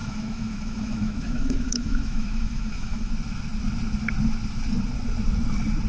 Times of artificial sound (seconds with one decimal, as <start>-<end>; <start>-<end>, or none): 0.0-3.1